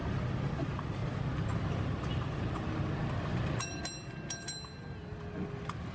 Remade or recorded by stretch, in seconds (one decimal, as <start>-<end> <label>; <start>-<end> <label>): 0.0-5.9 recorded